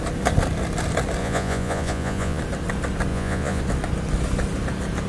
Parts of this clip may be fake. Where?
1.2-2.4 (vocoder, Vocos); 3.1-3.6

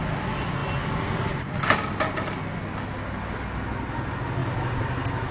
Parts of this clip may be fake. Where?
none

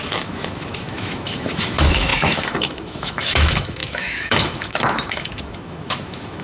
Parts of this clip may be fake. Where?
0.0-6.4 (autoencoder, DAC-VAE)